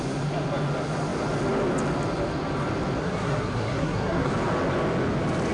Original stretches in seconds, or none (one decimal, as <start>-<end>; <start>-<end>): 0.0-3.0; 4.3-5.5